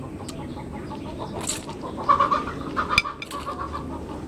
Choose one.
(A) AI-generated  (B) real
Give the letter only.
B